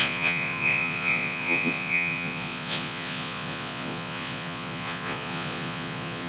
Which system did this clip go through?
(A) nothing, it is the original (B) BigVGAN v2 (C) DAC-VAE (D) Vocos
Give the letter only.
D